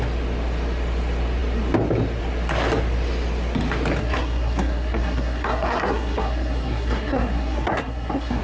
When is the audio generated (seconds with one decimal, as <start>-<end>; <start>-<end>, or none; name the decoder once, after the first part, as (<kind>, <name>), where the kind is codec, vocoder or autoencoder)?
4.0-8.4 (codec, SNAC)